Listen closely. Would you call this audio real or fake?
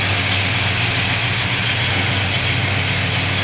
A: real